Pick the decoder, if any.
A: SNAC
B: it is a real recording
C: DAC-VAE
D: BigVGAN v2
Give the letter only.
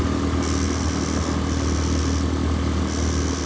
B